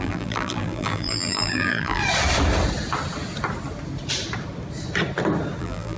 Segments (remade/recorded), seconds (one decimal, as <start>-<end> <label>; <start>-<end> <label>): 0.0-2.0 remade; 2.0-5.6 recorded; 5.6-6.0 remade